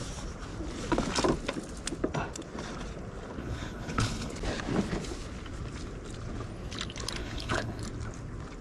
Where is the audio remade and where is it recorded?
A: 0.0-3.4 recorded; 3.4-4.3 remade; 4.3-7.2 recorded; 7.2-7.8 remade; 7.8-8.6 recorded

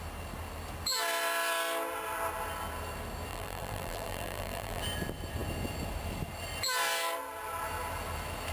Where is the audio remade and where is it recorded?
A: 0.0-3.3 recorded; 3.3-4.8 remade; 4.8-8.5 recorded

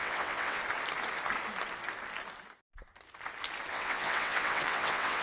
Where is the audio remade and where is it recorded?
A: 0.0-0.6 remade; 0.6-3.7 recorded; 3.7-5.2 remade

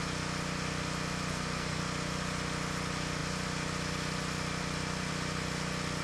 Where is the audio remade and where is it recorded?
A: 0.0-1.3 recorded; 1.3-1.8 remade; 1.8-6.0 recorded

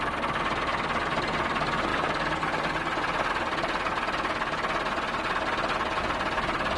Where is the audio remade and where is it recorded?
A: 0.0-6.8 recorded

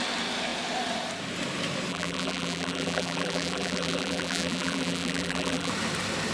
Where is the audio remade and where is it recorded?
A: 0.0-1.9 recorded; 1.9-5.7 remade; 5.7-6.3 recorded

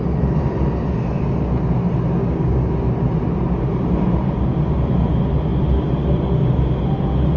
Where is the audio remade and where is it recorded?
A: 0.0-2.2 recorded; 2.2-2.7 remade; 2.7-7.4 recorded

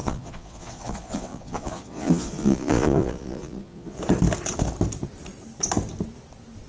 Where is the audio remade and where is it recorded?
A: 0.0-4.0 remade; 4.0-6.7 recorded